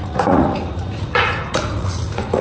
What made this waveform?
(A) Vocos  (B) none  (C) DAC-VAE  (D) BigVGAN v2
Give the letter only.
A